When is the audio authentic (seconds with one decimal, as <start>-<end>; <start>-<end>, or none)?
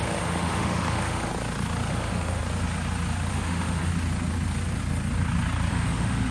1.3-1.9; 2.4-3.3; 3.9-5.7